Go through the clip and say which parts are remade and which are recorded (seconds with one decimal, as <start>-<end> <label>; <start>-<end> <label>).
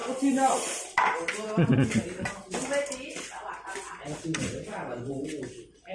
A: 0.0-5.9 recorded